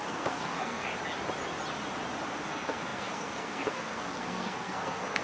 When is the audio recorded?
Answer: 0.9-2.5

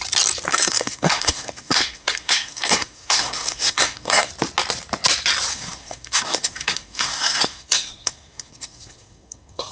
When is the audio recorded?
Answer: 0.0-0.5; 4.3-5.5

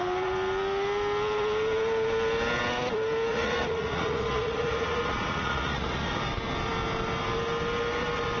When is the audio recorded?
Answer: 0.0-3.3; 6.1-8.4

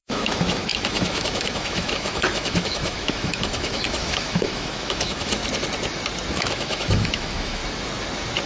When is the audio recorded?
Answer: 5.4-6.3; 7.6-8.5

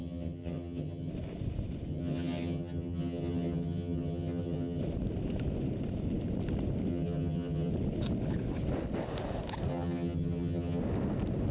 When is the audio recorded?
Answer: 1.1-1.9; 4.8-6.9; 7.7-9.7; 10.8-11.5